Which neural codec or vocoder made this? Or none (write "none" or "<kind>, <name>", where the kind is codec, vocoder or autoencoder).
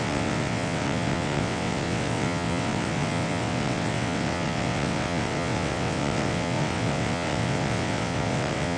vocoder, WaveNeXt